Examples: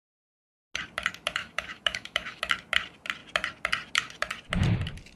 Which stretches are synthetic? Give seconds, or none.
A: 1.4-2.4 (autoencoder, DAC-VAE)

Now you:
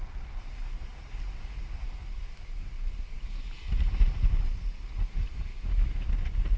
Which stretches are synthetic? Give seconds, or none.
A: 5.5-6.1 (autoencoder, DAC-VAE)

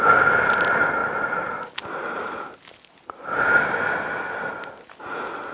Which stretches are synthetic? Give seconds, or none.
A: none